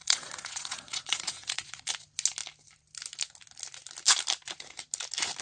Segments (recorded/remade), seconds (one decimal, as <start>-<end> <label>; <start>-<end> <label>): 0.0-1.9 remade; 1.9-5.4 recorded